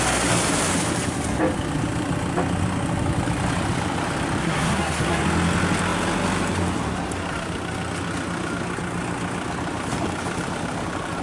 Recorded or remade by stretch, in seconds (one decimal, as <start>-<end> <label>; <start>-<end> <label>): 0.0-4.4 recorded; 4.4-5.2 remade; 5.2-11.2 recorded